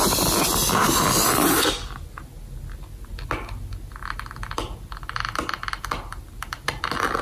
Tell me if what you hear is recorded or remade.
recorded